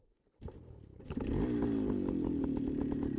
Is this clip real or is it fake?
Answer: real